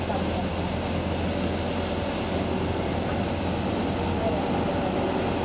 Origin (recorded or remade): recorded